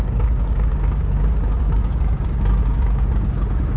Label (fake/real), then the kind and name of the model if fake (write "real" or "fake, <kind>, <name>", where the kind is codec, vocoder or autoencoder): fake, codec, DAC